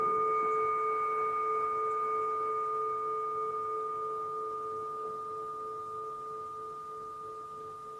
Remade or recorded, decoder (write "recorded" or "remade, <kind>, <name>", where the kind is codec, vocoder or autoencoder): recorded